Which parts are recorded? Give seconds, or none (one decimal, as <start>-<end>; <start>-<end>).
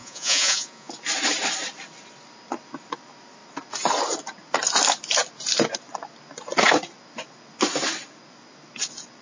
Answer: 0.9-9.2